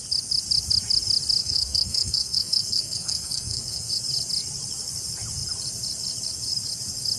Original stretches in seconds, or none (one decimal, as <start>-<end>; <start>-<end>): 0.0-1.4; 3.9-7.2